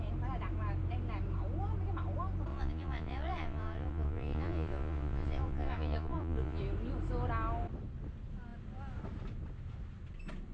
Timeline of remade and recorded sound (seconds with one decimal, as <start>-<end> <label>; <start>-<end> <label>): 0.0-2.5 recorded; 2.5-6.6 remade; 6.6-10.5 recorded

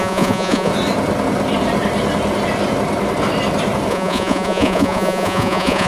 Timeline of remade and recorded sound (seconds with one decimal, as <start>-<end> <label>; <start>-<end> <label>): 0.0-0.7 remade; 0.7-3.9 recorded; 3.9-5.9 remade

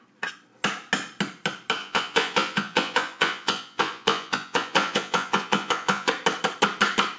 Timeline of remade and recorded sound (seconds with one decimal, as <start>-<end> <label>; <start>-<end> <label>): 0.0-1.8 recorded; 1.8-6.1 remade; 6.1-7.2 recorded

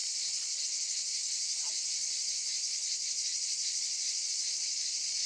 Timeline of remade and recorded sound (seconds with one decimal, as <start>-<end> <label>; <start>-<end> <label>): 0.0-0.6 remade; 0.6-2.0 recorded; 2.0-5.3 remade

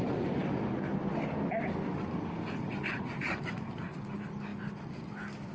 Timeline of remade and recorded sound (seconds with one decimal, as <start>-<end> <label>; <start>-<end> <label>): 0.0-5.5 recorded

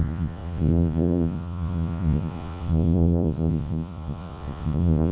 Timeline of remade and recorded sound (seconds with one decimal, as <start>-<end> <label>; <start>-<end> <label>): 0.0-5.1 remade

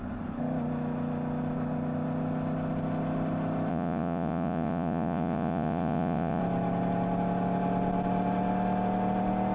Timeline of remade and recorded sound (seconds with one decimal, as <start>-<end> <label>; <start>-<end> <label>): 0.0-3.7 recorded; 3.7-6.4 remade; 6.4-9.5 recorded